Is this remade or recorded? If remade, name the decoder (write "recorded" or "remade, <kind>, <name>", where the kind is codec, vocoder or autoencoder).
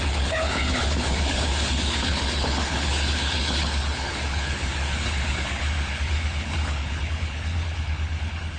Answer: remade, codec, HILCodec